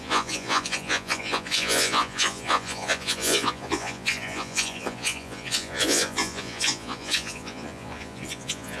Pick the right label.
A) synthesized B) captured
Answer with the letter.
A